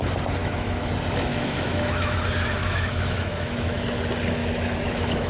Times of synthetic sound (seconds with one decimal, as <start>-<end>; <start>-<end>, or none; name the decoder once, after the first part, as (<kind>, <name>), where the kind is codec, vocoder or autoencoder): 0.4-0.9 (autoencoder, DAC-VAE); 1.3-2.2; 2.6-3.8; 4.4-5.3